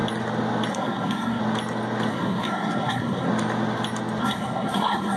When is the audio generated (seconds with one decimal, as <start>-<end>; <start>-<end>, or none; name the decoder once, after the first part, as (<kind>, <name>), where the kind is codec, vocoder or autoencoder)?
0.7-1.4 (codec, SNAC); 2.1-3.3; 4.2-5.2